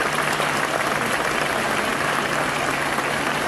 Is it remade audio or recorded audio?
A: recorded